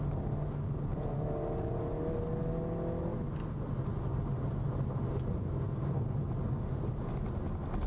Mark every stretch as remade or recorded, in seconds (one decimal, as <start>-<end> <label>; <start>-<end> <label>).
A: 0.0-0.9 recorded; 0.9-1.8 remade; 1.8-4.1 recorded; 4.1-6.4 remade; 6.4-7.9 recorded